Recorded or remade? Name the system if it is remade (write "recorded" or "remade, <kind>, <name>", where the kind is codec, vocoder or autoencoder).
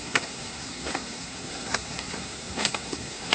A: remade, codec, SNAC